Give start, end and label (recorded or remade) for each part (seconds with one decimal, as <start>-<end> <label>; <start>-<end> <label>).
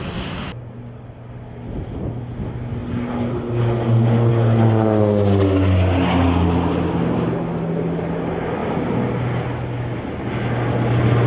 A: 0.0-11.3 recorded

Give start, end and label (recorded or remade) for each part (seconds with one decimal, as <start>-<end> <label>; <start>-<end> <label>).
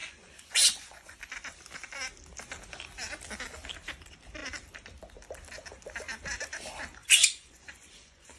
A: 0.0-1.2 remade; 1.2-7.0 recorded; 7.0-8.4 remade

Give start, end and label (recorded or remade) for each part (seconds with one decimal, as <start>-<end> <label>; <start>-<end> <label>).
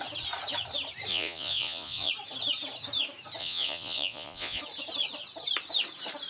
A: 0.0-1.1 recorded; 1.1-2.1 remade; 2.1-3.4 recorded; 3.4-4.6 remade; 4.6-6.3 recorded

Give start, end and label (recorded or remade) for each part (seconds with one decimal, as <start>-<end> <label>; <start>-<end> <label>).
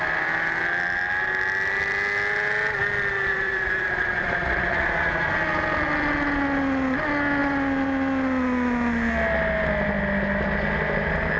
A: 0.0-3.3 recorded; 3.3-5.3 remade; 5.3-11.4 recorded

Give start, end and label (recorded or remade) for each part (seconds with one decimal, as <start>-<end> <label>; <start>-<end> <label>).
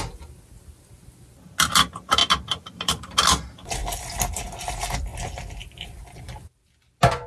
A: 0.0-7.3 recorded